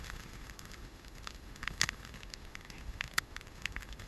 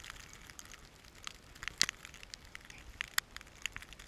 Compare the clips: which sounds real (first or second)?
second